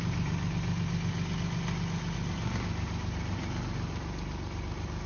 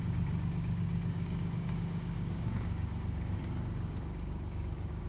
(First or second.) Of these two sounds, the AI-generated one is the second